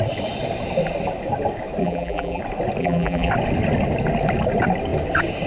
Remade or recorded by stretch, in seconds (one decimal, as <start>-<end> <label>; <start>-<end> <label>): 0.0-1.8 recorded; 1.8-2.4 remade; 2.4-2.8 recorded; 2.8-3.3 remade; 3.3-5.5 recorded